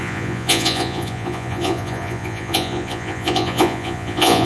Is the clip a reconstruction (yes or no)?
yes